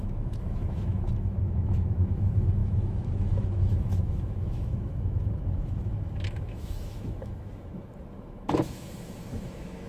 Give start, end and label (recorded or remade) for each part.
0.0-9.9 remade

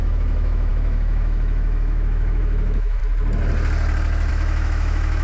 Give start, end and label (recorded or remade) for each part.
0.0-3.0 remade; 3.0-4.3 recorded; 4.3-5.2 remade

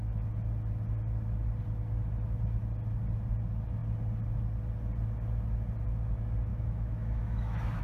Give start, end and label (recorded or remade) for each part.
0.0-6.5 recorded; 6.5-7.8 remade